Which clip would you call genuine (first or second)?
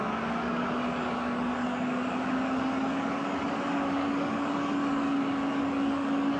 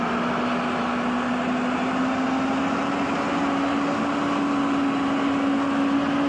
second